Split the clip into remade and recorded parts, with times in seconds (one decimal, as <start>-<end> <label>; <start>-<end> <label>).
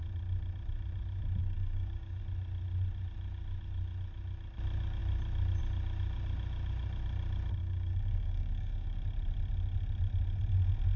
0.0-1.4 recorded; 1.4-2.2 remade; 2.2-7.6 recorded; 7.6-9.0 remade; 9.0-11.0 recorded